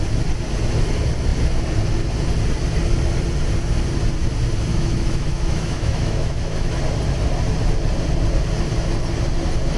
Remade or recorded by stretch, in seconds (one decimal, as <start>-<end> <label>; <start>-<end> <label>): 0.0-4.7 recorded; 4.7-6.7 remade; 6.7-9.8 recorded